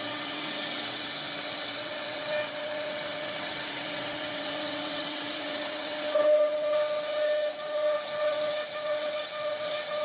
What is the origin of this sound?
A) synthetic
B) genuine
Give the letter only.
A